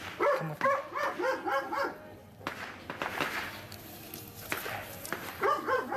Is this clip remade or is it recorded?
recorded